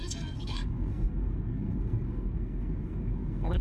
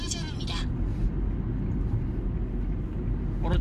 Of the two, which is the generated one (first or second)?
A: first